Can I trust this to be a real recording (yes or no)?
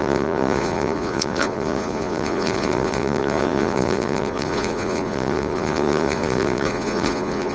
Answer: no